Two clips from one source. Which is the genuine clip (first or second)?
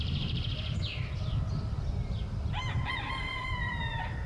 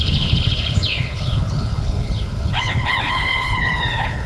first